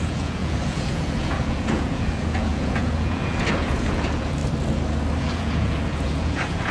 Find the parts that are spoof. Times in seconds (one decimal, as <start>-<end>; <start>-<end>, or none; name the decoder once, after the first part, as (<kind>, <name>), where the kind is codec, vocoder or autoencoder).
0.0-4.4 (vocoder, Vocos); 5.2-6.7